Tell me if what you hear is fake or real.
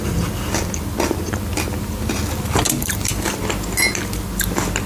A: real